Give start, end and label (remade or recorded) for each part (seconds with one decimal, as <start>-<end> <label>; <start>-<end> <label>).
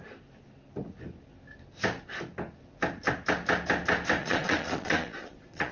0.0-4.2 recorded; 4.2-5.7 remade